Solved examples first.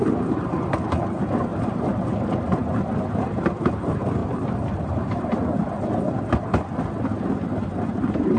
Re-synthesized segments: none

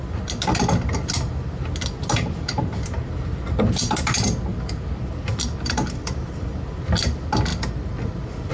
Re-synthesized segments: 4.5-6.8 (vocoder, BigVGAN v2); 7.5-8.5